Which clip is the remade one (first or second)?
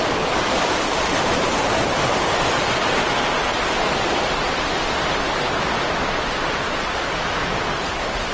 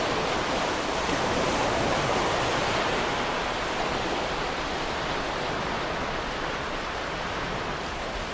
first